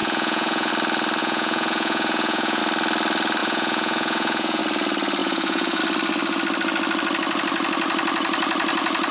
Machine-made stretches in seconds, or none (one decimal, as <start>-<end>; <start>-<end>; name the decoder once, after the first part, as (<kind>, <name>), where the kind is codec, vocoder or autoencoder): 0.0-0.7 (vocoder, Vocos); 1.2-2.6; 3.4-4.6; 5.2-5.8